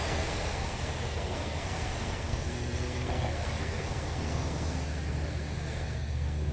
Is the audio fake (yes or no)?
yes